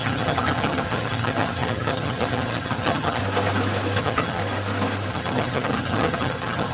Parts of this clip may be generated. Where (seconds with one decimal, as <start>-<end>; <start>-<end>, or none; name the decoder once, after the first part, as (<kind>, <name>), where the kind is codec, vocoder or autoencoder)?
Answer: 0.0-3.2 (vocoder, HiFi-GAN); 4.0-4.4; 5.1-6.7